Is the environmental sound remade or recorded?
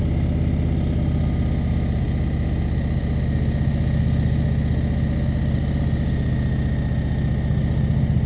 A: recorded